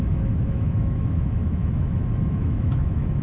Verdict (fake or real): fake